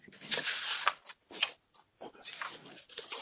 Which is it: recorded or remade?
recorded